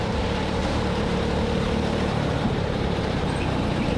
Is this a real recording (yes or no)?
no